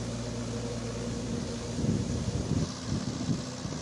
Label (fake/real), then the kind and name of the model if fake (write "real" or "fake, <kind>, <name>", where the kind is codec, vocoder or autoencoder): real